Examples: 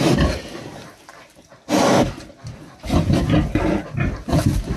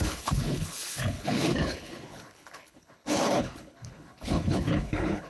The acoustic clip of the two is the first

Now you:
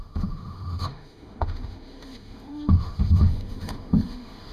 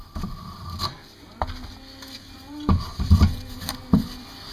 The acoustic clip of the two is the second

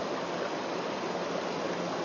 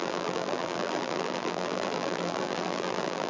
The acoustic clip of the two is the first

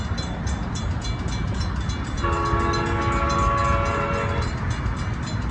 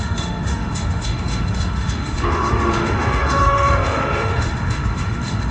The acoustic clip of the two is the first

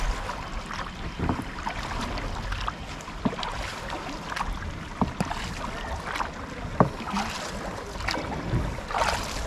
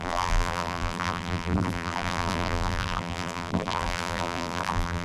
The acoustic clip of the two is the first